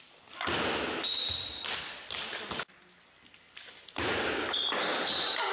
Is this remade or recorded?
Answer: recorded